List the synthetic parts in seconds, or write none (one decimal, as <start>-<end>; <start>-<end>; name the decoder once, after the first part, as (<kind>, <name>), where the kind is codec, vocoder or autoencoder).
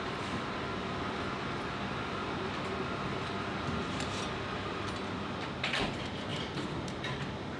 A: 6.3-7.6 (vocoder, BigVGAN v2)